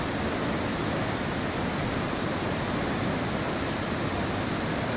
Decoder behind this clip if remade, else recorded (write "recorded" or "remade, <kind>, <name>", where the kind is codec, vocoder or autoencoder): recorded